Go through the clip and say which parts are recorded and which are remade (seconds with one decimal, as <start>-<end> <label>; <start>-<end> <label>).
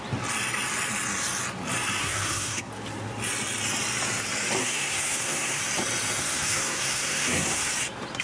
0.0-2.0 recorded; 2.0-2.7 remade; 2.7-4.6 recorded; 4.6-5.6 remade; 5.6-6.2 recorded; 6.2-7.7 remade; 7.7-8.2 recorded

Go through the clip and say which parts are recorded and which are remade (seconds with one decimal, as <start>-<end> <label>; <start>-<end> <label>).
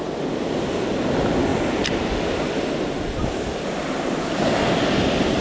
0.0-5.4 recorded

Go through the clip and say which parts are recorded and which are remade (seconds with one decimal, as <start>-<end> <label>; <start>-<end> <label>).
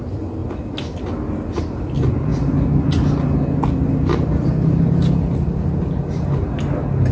0.0-7.1 recorded